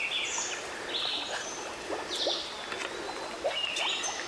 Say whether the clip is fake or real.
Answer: real